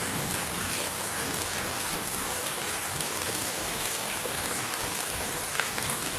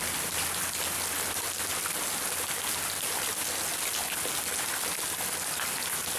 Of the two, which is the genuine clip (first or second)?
second